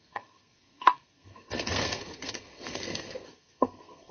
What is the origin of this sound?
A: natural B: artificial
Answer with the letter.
B